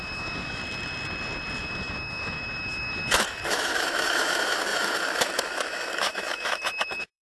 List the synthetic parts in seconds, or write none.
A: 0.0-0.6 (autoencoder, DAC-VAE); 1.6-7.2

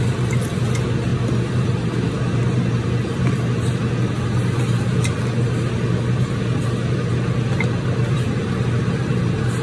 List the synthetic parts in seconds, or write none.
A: none

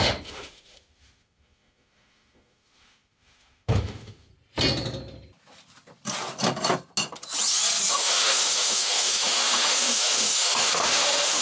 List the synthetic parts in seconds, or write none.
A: 0.0-4.3 (autoencoder, DAC-VAE); 7.9-11.4

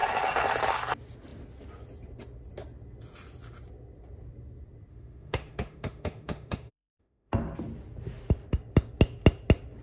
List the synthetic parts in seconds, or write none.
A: 4.9-7.3 (autoencoder, DAC-VAE)

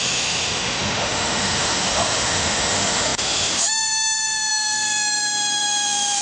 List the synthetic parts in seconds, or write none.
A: 0.0-6.2 (autoencoder, DAC-VAE)

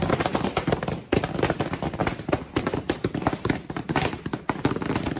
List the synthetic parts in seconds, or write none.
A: none

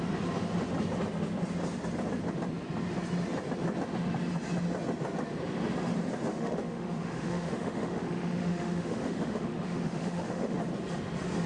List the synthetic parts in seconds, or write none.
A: 6.3-10.6 (autoencoder, DAC-VAE)